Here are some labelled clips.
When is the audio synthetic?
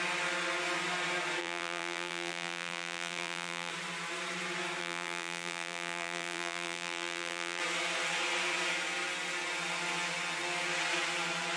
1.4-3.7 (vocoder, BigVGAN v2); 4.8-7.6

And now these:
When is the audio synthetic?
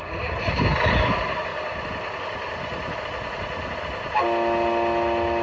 none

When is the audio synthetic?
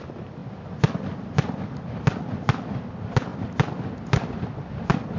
0.0-3.3 (vocoder, BigVGAN v2)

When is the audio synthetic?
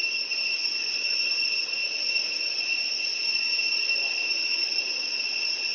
0.0-1.0 (vocoder, BigVGAN v2)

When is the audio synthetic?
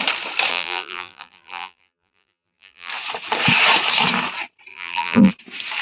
0.5-2.9 (vocoder, BigVGAN v2); 4.7-5.3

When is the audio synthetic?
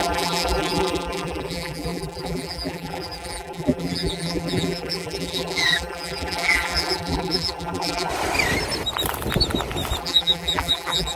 0.0-8.1 (vocoder, BigVGAN v2); 10.0-11.2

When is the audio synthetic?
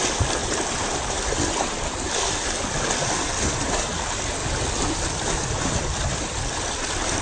0.0-4.4 (vocoder, BigVGAN v2); 5.1-7.2